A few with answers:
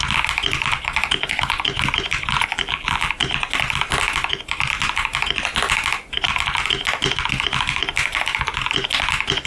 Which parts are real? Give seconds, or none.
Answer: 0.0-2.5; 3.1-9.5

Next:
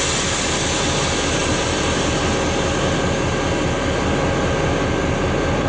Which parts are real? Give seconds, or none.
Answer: 0.0-1.4; 2.1-5.7

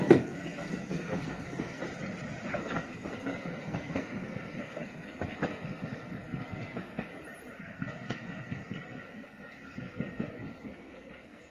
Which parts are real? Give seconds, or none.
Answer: 1.8-2.5; 7.1-7.6

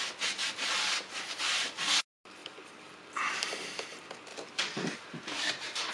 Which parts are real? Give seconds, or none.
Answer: 0.0-2.4; 3.1-4.3